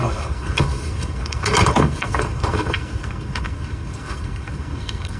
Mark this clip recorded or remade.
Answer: remade